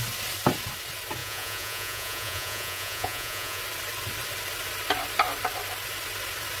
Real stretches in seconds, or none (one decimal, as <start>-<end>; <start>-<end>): 0.0-1.2; 3.6-6.6